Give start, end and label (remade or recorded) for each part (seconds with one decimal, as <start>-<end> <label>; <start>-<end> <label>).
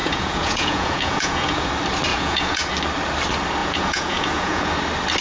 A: 0.0-1.7 remade; 1.7-2.1 recorded; 2.1-2.7 remade; 2.7-3.6 recorded; 3.6-4.7 remade; 4.7-5.2 recorded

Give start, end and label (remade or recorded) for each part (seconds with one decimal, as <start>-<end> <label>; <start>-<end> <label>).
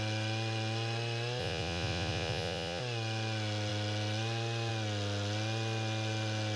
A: 0.0-1.4 recorded; 1.4-2.8 remade; 2.8-6.6 recorded